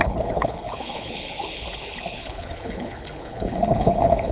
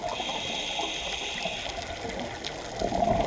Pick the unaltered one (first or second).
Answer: second